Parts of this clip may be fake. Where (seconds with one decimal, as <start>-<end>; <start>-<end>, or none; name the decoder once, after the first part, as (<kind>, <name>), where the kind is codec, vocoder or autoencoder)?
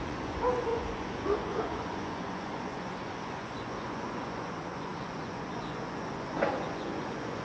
0.0-7.4 (vocoder, Vocos)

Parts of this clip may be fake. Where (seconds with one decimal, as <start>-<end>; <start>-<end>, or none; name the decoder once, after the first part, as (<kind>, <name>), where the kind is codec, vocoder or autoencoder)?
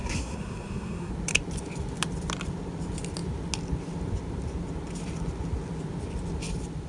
0.0-1.1 (codec, SNAC)